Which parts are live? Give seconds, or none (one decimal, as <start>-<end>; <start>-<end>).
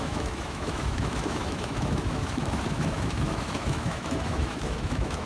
none